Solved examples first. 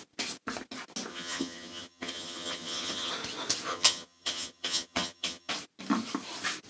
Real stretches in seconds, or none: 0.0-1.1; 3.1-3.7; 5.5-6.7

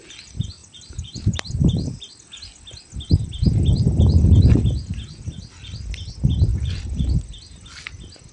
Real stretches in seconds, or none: 0.0-0.6; 2.1-6.5; 7.4-8.3

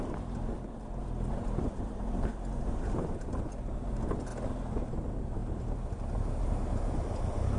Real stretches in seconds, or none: 0.5-1.4; 4.3-4.9; 5.4-6.9